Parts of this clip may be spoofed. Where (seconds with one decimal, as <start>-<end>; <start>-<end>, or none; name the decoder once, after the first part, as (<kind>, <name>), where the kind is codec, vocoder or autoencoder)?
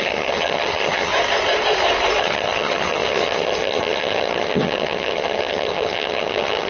0.0-1.1 (vocoder, HiFi-GAN); 2.2-6.7